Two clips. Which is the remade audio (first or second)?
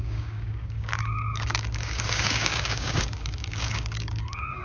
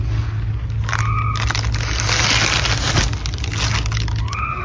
first